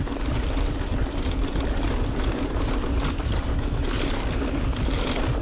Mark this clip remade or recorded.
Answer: recorded